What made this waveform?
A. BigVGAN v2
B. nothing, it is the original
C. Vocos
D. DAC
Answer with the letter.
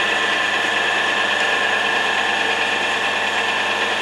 B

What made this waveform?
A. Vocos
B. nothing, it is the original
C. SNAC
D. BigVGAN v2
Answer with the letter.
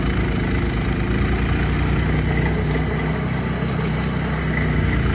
B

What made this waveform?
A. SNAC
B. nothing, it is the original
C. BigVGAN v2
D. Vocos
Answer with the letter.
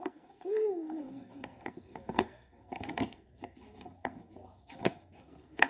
A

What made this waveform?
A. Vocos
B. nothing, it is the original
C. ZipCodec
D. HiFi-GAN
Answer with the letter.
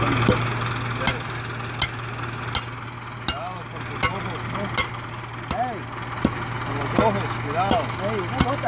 B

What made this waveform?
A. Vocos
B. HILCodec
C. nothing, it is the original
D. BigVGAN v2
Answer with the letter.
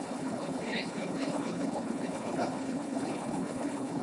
B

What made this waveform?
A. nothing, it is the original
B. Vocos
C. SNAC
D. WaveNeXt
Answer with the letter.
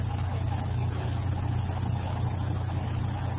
A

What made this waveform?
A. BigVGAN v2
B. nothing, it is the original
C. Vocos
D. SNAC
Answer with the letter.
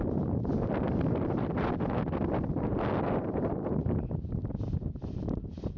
A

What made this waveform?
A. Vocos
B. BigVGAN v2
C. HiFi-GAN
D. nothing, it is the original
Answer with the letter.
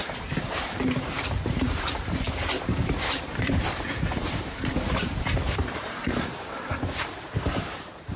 B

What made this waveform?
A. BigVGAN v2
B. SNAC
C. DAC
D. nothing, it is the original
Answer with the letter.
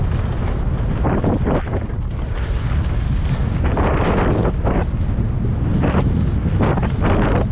D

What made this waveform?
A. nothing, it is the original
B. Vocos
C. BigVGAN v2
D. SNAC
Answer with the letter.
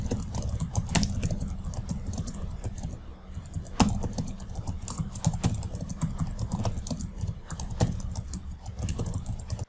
A